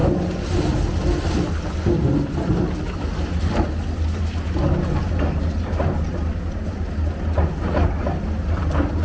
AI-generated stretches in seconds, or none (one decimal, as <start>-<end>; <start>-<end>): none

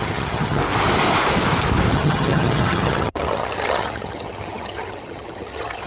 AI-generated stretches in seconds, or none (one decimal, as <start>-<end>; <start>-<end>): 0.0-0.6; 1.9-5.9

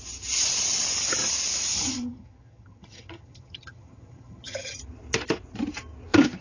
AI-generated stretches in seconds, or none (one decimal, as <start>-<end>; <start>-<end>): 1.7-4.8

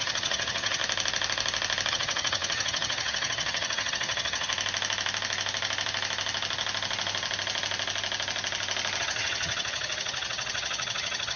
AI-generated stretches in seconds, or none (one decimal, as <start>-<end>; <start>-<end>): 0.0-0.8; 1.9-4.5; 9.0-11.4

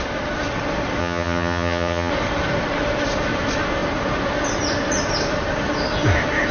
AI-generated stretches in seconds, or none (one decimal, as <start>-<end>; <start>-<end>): 1.0-2.1